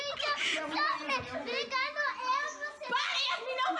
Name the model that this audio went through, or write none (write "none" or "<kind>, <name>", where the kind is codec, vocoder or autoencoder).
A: none